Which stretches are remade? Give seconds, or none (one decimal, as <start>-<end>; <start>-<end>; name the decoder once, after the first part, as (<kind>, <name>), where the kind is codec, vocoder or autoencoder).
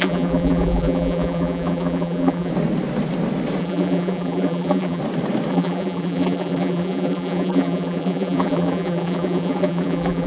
0.0-2.5 (vocoder, BigVGAN v2); 3.6-5.0; 5.5-10.3